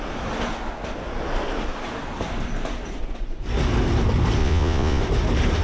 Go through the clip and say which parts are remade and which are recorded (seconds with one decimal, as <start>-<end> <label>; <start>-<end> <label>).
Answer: 0.0-4.4 recorded; 4.4-5.0 remade; 5.0-5.6 recorded